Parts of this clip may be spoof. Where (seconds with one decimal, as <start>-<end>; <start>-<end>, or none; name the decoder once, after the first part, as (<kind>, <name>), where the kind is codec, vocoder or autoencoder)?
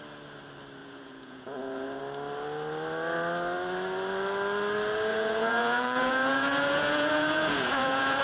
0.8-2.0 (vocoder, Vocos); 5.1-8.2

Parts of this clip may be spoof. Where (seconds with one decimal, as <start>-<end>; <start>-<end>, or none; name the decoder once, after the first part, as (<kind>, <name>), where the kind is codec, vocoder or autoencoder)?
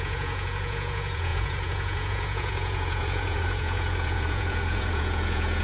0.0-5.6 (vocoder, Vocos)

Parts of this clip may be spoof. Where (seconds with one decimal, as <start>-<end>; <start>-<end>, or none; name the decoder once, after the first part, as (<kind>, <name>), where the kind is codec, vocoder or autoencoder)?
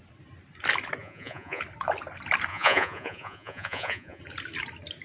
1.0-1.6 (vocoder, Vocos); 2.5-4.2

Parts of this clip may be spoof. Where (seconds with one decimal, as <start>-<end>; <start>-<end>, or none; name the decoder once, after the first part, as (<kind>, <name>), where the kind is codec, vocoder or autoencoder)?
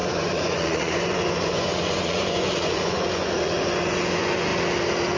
0.0-4.5 (vocoder, Vocos)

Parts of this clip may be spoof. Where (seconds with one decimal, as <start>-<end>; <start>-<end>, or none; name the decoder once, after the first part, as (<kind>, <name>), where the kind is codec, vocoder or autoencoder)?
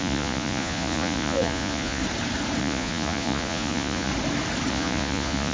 0.0-2.0 (vocoder, Vocos); 2.6-4.1; 4.7-5.5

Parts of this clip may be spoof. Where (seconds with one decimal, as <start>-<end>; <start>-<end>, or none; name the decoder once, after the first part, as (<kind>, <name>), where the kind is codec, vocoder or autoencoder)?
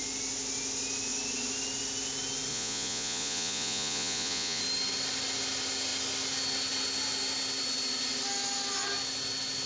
2.5-4.6 (vocoder, Vocos)